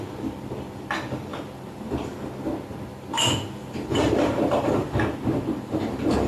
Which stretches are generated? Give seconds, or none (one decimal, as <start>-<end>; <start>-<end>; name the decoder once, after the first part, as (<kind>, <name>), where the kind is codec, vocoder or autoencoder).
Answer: 1.3-2.3 (vocoder, BigVGAN v2); 3.6-6.3